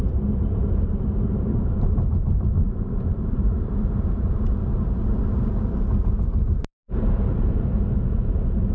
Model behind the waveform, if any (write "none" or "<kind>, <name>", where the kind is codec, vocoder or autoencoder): vocoder, BigVGAN v2